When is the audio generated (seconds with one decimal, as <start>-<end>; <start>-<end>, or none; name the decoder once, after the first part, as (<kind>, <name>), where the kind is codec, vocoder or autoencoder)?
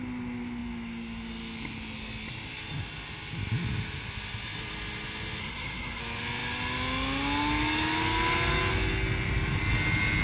5.4-6.0 (codec, SNAC)